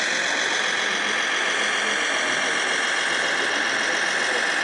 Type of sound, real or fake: real